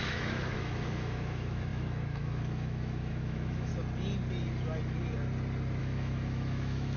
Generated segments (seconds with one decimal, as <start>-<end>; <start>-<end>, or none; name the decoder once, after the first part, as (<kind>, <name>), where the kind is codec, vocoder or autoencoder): 0.0-3.7 (autoencoder, DAC-VAE); 5.8-7.0